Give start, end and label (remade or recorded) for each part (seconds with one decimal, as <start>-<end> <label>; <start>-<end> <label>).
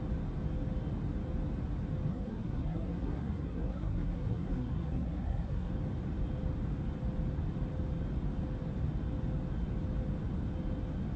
0.0-2.1 recorded; 2.1-5.7 remade; 5.7-11.2 recorded